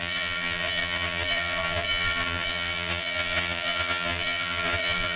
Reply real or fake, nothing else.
fake